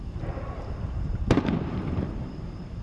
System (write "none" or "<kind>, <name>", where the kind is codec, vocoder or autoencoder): none